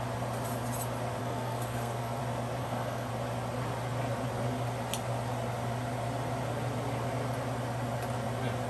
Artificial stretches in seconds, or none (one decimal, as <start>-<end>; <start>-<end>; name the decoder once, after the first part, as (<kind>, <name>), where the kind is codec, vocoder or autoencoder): 1.2-2.2 (codec, SNAC); 2.6-3.1